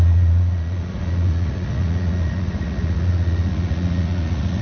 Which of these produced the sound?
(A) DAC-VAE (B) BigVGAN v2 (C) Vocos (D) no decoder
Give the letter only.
C